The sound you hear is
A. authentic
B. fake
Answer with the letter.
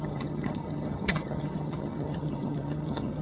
B